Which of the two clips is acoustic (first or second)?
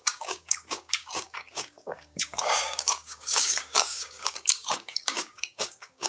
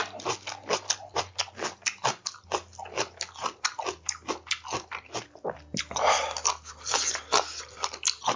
second